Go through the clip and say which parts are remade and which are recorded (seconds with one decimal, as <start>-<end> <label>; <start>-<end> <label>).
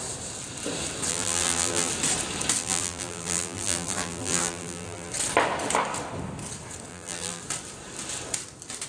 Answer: 0.0-1.1 recorded; 1.1-1.9 remade; 1.9-2.6 recorded; 2.6-5.1 remade; 5.1-6.9 recorded; 6.9-7.4 remade; 7.4-8.9 recorded